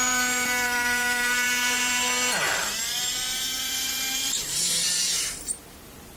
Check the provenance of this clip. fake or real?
fake